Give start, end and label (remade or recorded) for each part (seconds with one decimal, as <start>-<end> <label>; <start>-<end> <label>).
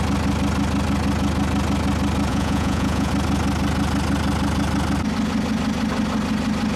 0.0-2.3 recorded; 2.3-3.1 remade; 3.1-6.8 recorded